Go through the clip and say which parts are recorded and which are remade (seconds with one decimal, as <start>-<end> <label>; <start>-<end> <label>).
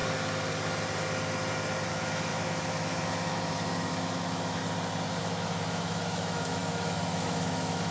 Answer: 0.0-1.9 recorded; 1.9-4.6 remade; 4.6-5.2 recorded; 5.2-7.9 remade